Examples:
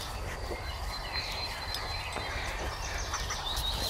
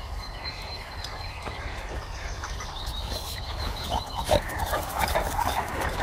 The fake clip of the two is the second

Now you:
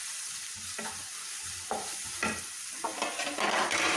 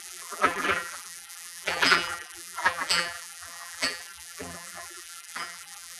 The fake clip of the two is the second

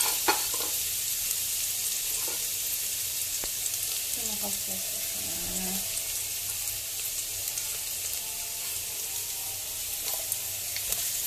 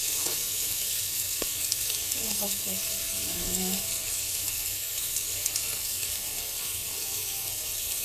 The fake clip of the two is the second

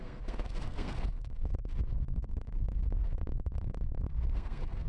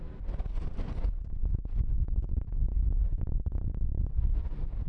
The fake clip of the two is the first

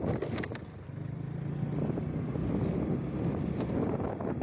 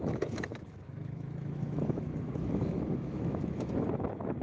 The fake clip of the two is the second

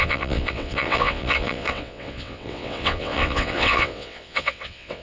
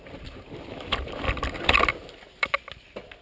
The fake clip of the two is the first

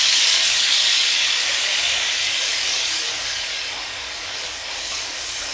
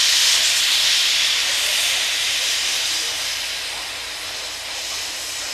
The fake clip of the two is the first